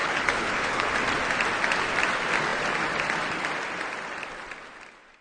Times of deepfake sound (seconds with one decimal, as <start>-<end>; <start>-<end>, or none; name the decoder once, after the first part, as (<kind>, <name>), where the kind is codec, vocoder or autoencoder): 0.0-0.9 (codec, HILCodec)